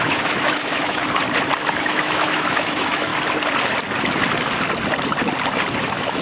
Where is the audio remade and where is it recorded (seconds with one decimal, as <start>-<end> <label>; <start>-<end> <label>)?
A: 0.0-1.0 remade; 1.0-1.7 recorded; 1.7-3.1 remade; 3.1-5.8 recorded; 5.8-6.2 remade